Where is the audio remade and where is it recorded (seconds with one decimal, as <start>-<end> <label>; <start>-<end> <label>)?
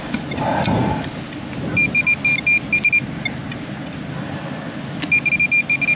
0.0-6.0 recorded